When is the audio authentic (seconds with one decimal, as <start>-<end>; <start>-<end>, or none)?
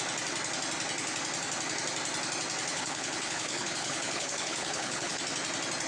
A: 0.0-2.7; 5.2-5.9